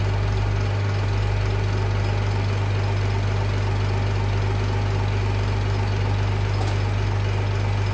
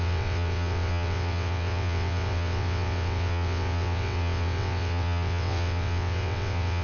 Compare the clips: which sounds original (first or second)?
first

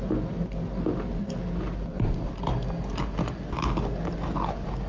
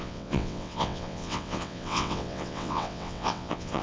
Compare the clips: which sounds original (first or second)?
first